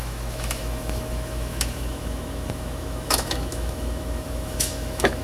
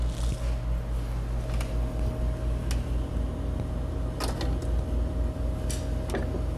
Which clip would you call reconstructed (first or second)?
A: first